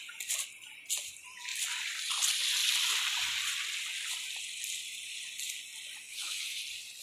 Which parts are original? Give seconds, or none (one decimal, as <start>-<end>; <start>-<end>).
0.0-6.0; 6.6-7.0